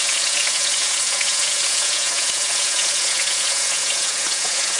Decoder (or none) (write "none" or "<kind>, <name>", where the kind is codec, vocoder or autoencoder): vocoder, Vocos